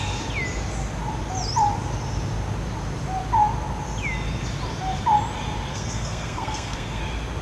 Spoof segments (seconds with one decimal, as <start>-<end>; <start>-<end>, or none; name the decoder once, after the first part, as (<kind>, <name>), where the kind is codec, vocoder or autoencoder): 5.7-7.0 (codec, SNAC)